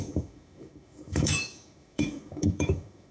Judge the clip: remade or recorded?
remade